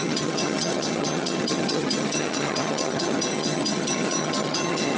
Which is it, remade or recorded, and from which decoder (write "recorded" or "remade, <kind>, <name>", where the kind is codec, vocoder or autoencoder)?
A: remade, vocoder, HiFi-GAN